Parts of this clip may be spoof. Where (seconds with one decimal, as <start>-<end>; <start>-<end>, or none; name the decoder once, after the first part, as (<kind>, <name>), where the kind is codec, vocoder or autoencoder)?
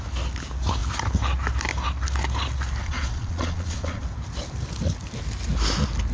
2.8-4.0 (vocoder, Vocos)